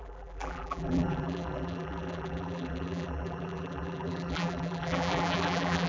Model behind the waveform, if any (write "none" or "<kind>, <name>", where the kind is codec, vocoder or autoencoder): vocoder, BigVGAN v2